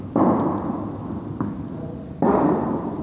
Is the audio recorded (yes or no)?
yes